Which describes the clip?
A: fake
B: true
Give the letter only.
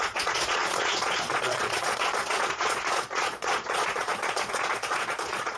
A